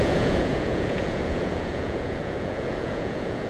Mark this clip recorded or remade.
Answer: remade